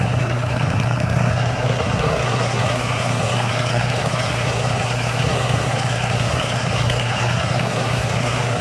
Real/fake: fake